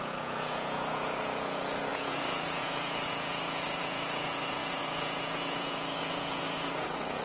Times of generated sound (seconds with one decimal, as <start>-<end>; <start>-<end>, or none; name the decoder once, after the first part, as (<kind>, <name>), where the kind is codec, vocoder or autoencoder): 0.0-7.2 (vocoder, Vocos)